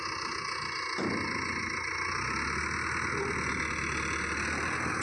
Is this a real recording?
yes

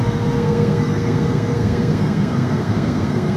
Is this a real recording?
no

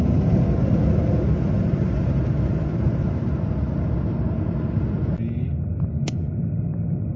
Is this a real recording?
yes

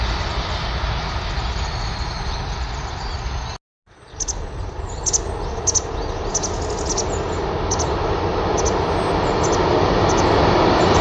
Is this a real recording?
yes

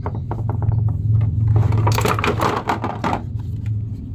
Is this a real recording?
yes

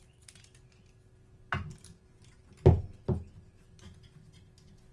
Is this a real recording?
yes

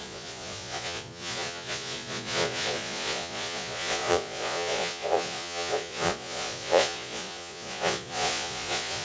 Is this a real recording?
no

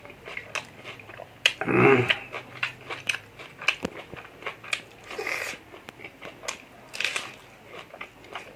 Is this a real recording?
yes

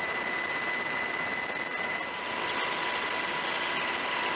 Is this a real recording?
yes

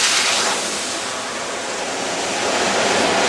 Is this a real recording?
yes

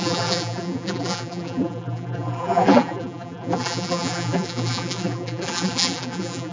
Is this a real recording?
no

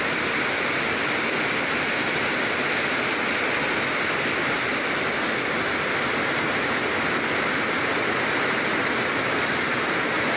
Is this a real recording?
yes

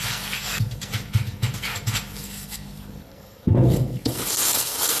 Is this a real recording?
no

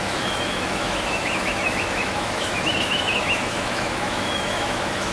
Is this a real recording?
no